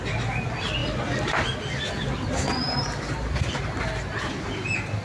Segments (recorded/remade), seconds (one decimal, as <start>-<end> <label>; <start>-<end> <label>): 0.0-5.0 recorded